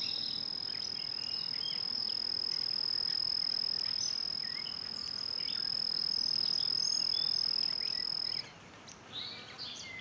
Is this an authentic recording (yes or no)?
yes